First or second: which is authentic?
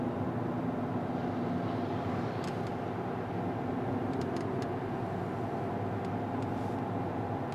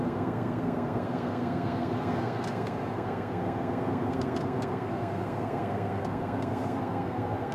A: first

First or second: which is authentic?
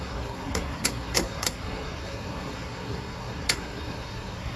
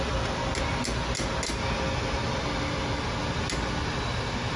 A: second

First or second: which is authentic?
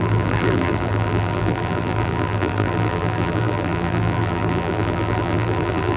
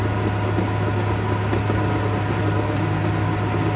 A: second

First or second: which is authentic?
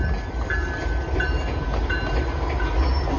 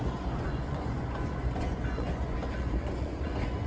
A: first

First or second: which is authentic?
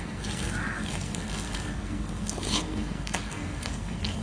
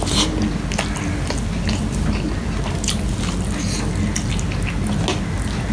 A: second